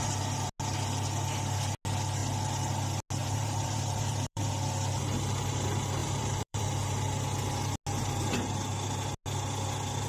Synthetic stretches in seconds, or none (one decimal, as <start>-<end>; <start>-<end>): 3.2-4.5; 6.0-6.6